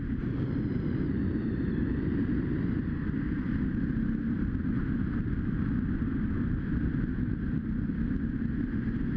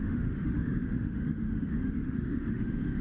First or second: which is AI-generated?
second